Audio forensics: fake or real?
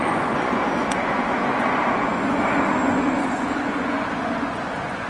fake